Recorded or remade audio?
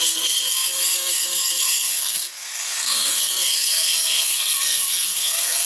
remade